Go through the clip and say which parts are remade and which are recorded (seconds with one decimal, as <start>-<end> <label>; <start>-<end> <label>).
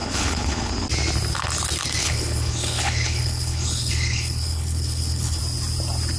0.0-0.7 remade; 0.7-2.0 recorded; 2.0-5.4 remade; 5.4-6.2 recorded